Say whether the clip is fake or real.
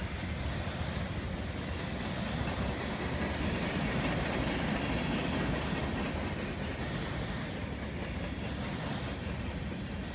real